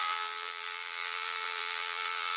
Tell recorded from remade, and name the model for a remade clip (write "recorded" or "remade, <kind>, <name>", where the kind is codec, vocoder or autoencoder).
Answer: remade, vocoder, BigVGAN v2